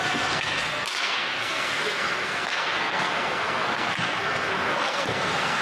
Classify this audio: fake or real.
fake